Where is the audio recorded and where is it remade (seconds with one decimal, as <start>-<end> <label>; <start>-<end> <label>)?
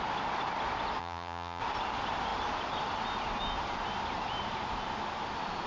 0.0-1.0 recorded; 1.0-1.6 remade; 1.6-5.7 recorded